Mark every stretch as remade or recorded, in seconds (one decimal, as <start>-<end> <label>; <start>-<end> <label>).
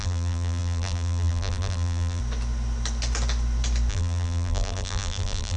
0.0-2.2 remade; 2.2-3.9 recorded; 3.9-5.6 remade